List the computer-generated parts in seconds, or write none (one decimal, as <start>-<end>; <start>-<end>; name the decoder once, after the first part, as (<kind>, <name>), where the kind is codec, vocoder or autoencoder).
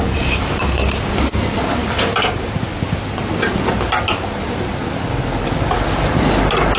none